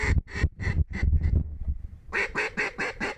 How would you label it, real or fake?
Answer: fake